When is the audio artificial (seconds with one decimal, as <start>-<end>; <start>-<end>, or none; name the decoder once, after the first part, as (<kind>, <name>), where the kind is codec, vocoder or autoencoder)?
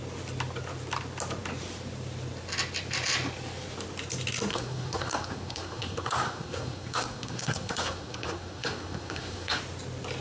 4.5-9.6 (codec, SNAC)